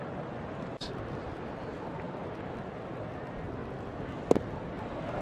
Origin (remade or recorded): recorded